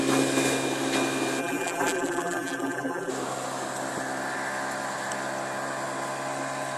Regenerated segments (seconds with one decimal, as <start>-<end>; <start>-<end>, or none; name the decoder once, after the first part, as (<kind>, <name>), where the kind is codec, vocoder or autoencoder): 1.4-3.1 (vocoder, BigVGAN v2)